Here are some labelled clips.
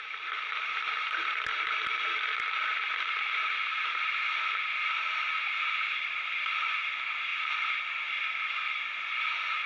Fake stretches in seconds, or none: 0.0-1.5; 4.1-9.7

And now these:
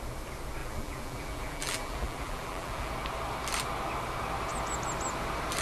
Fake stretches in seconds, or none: 0.6-2.9